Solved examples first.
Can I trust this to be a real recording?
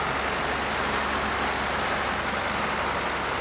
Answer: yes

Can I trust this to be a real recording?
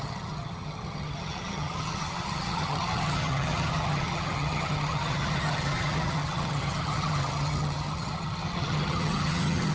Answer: no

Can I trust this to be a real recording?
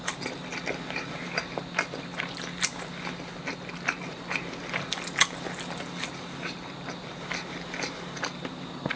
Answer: yes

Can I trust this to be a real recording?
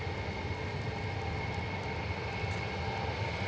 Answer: yes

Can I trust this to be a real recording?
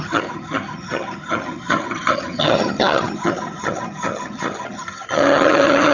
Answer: no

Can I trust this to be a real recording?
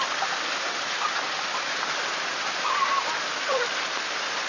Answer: yes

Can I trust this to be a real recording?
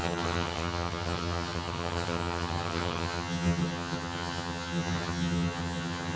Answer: no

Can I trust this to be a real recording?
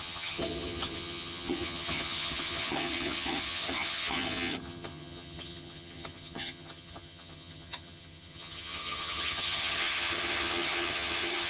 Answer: no